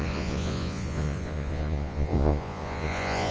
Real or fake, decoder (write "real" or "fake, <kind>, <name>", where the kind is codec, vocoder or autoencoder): fake, vocoder, Vocos